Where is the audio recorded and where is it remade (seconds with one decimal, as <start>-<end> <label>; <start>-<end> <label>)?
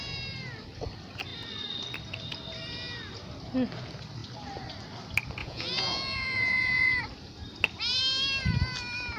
0.0-5.4 recorded; 5.4-7.0 remade; 7.0-9.2 recorded